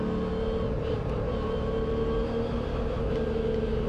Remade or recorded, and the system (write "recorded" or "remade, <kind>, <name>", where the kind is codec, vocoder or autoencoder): recorded